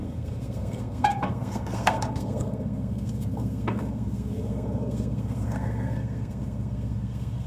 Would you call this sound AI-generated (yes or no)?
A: yes